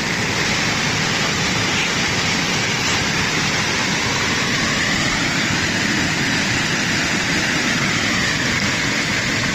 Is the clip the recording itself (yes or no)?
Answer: yes